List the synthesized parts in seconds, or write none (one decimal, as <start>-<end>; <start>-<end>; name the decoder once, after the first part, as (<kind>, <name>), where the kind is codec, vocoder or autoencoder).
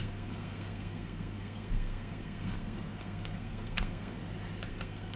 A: 0.0-4.2 (codec, SNAC); 4.7-5.2